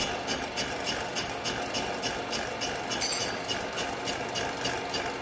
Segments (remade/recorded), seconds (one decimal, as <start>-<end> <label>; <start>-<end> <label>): 0.0-5.2 recorded